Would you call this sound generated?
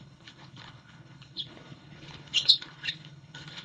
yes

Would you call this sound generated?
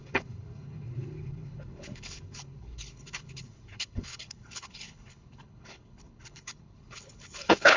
yes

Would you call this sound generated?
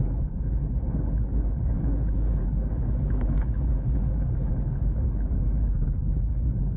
yes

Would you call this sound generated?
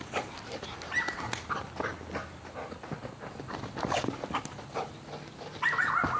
no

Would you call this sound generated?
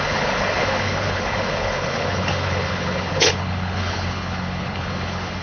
yes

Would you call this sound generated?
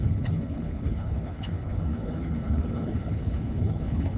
yes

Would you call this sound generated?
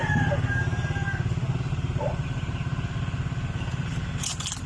no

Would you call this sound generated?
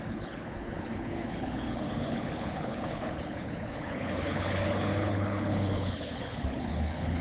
yes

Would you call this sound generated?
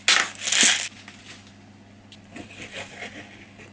no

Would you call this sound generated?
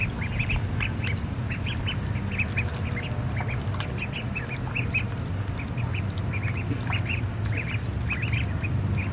no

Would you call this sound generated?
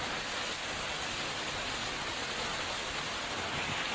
no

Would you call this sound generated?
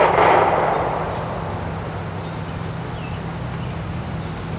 no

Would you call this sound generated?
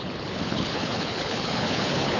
yes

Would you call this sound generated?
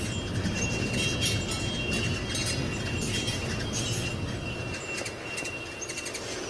no